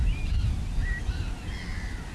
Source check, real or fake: real